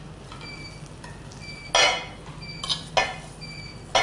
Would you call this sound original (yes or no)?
yes